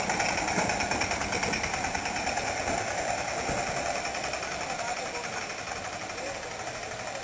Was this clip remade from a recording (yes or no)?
no